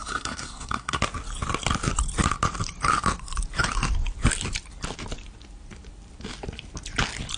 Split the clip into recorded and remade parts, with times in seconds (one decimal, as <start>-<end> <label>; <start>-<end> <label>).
0.0-1.0 remade; 1.0-7.4 recorded